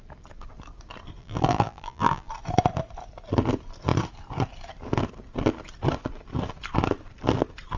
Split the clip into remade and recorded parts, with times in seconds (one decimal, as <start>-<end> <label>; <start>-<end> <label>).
0.0-1.2 recorded; 1.2-2.3 remade; 2.3-7.8 recorded